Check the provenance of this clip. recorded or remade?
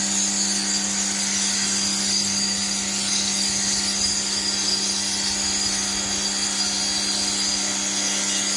recorded